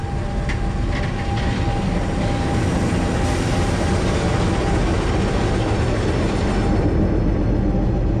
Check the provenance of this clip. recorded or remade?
recorded